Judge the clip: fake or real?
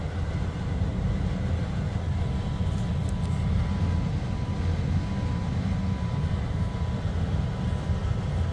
real